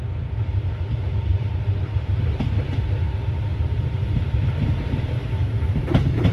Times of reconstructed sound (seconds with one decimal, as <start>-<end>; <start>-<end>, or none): 1.3-2.0; 3.5-6.3